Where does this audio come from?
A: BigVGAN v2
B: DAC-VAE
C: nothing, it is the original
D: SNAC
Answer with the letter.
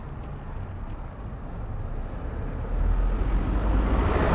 C